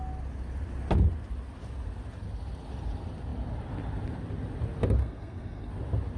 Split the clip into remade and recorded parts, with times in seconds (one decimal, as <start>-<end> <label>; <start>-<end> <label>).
0.0-5.0 recorded; 5.0-5.7 remade; 5.7-6.2 recorded